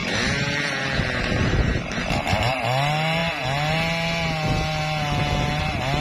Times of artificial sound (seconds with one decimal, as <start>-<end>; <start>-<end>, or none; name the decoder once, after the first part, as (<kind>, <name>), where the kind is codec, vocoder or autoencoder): 0.0-2.6 (vocoder, BigVGAN v2)